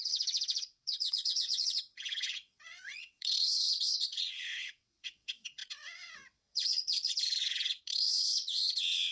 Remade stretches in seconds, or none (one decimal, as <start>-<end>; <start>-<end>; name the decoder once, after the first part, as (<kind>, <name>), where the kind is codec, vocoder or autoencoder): 0.0-9.1 (vocoder, WaveNeXt)